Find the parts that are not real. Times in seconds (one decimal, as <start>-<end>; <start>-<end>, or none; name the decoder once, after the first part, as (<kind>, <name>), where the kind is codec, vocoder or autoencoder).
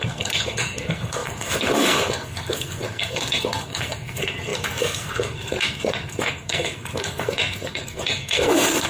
0.0-8.9 (codec, SNAC)